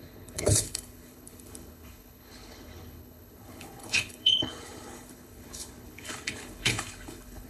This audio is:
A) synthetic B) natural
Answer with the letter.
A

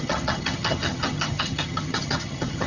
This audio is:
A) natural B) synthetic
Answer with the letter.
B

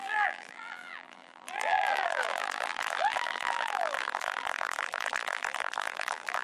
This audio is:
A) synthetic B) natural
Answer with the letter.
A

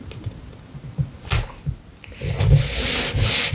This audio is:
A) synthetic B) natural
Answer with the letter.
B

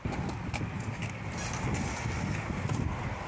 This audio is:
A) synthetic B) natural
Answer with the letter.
B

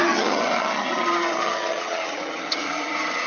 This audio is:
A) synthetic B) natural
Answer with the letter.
A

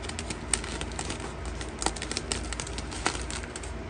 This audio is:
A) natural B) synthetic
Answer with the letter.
A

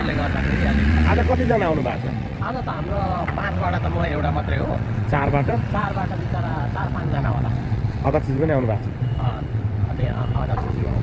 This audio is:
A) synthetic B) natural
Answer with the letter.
A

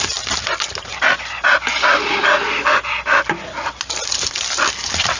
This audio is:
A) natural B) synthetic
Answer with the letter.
A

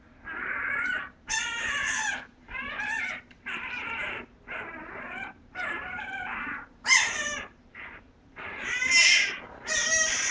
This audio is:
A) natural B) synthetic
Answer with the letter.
B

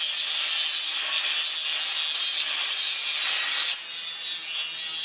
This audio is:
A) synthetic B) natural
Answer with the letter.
B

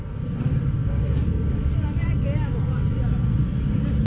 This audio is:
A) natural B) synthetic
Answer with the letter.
A